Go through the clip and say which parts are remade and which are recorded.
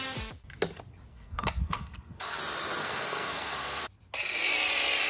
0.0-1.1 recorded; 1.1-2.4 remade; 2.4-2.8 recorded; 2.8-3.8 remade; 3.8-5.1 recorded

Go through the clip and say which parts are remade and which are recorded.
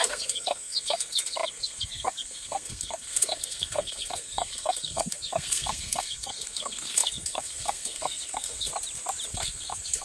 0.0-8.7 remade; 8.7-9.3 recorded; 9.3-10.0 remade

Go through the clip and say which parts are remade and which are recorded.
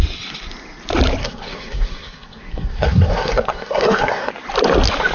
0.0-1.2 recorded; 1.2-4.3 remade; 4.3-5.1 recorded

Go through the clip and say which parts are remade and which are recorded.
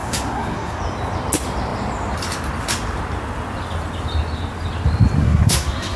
0.0-0.8 remade; 0.8-5.2 recorded; 5.2-6.0 remade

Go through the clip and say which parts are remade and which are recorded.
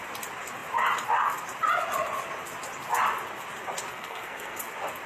0.0-3.9 recorded; 3.9-4.6 remade; 4.6-5.1 recorded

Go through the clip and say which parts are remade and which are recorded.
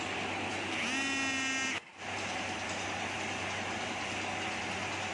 0.0-5.1 recorded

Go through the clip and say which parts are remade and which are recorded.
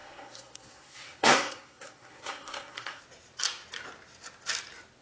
0.0-3.0 remade; 3.0-5.0 recorded